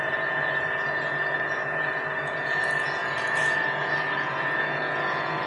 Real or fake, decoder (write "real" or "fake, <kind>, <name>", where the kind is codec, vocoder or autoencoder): fake, vocoder, Vocos